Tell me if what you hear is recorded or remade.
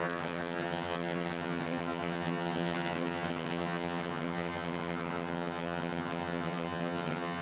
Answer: remade